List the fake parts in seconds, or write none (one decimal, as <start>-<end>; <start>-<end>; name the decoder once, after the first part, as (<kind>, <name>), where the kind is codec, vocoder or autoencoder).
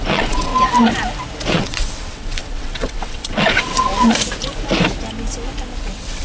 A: 0.0-0.5 (vocoder, WaveNeXt); 1.5-3.9; 5.8-6.2